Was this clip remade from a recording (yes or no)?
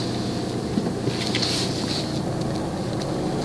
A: no